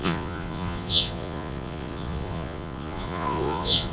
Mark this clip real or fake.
fake